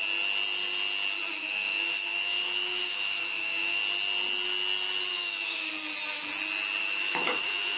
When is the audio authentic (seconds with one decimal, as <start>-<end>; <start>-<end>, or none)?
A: 0.0-1.4; 3.8-5.1; 5.7-6.8